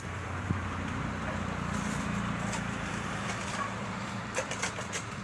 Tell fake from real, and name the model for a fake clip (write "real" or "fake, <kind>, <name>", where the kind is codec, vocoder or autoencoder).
fake, vocoder, BigVGAN v2